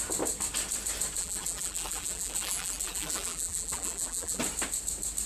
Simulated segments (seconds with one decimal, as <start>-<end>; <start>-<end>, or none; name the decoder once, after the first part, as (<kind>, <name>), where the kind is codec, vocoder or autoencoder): 1.2-4.4 (vocoder, BigVGAN v2)